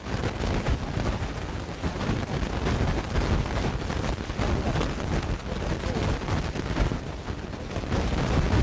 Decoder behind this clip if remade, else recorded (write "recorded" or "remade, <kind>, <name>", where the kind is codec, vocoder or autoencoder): recorded